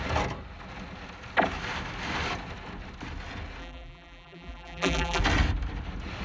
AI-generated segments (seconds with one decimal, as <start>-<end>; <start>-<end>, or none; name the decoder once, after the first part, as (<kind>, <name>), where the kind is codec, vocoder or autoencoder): 3.6-5.2 (vocoder, BigVGAN v2)